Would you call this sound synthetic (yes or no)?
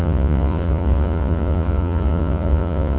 yes